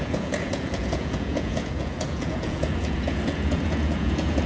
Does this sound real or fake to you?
fake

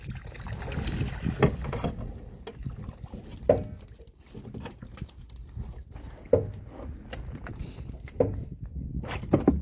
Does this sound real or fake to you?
real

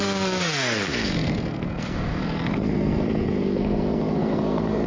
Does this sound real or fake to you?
fake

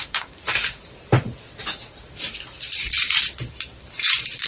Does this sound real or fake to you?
fake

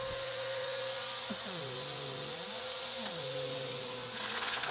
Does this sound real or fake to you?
fake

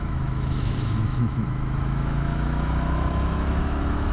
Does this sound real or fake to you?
fake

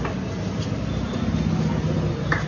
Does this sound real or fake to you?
real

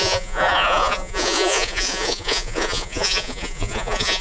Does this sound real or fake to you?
fake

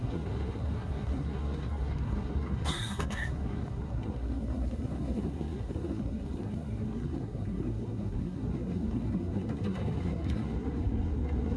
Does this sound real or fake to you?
fake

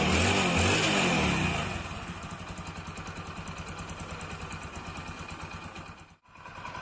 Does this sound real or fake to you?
real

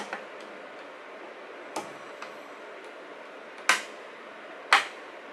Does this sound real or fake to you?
real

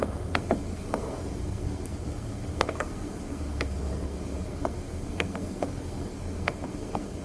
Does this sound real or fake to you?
fake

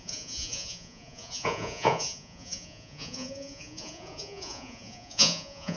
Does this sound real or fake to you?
fake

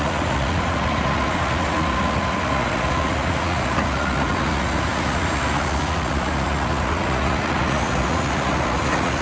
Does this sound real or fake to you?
fake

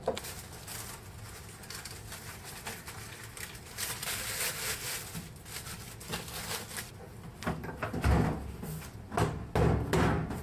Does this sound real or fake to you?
real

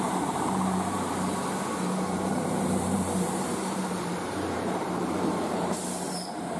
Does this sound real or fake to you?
fake